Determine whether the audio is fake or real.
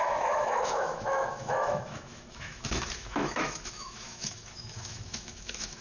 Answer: fake